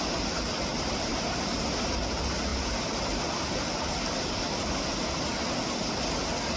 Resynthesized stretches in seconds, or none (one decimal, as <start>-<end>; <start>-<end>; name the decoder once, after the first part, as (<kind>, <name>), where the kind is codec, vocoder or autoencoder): 0.7-2.1 (vocoder, BigVGAN v2); 2.5-3.2